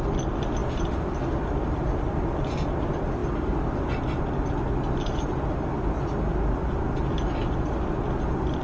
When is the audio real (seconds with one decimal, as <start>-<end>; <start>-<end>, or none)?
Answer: 0.0-8.6